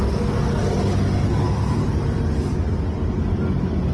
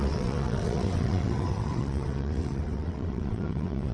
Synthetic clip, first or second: second